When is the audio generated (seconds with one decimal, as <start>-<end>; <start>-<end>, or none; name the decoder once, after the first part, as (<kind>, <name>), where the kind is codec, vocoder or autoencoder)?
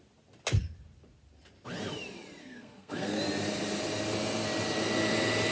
2.4-3.2 (codec, SNAC)